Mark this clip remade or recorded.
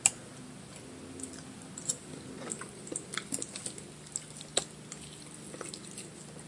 recorded